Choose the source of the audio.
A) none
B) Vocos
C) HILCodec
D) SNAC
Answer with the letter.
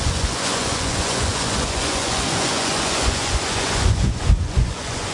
B